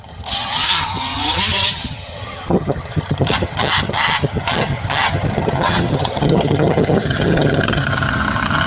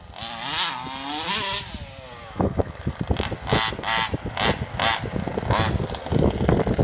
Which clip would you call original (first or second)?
second